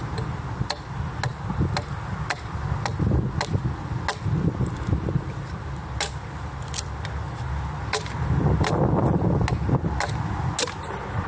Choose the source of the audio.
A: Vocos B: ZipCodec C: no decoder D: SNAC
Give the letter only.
C